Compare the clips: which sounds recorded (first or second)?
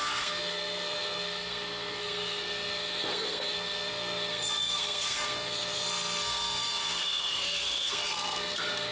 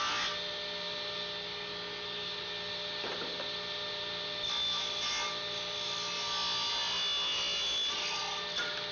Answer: second